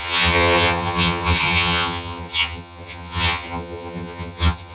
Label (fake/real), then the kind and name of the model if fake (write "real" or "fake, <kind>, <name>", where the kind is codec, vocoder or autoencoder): fake, vocoder, HiFi-GAN